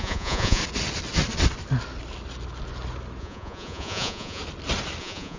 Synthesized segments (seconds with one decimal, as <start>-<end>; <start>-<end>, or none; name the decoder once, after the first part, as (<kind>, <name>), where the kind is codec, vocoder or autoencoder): 0.0-0.6 (vocoder, Vocos); 3.2-4.4; 5.0-5.4